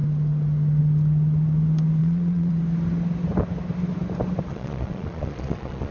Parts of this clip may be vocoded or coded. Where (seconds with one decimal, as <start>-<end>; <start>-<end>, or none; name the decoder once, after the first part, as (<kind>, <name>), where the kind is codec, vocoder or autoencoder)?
2.0-2.5 (vocoder, Vocos); 4.5-5.9